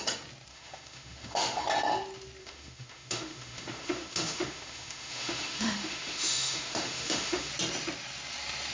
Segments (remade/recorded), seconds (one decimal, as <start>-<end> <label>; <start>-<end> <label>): 0.0-0.5 recorded; 0.5-1.6 remade; 1.6-2.4 recorded; 2.4-7.5 remade; 7.5-8.7 recorded